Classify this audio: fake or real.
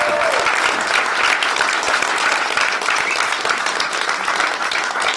real